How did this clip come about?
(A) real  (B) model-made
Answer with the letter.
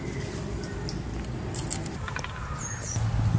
A